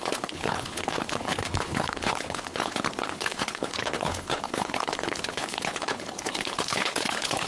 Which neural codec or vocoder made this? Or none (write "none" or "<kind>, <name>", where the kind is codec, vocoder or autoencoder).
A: codec, HILCodec